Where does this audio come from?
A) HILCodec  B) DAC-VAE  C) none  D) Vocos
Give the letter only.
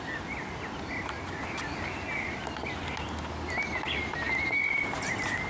C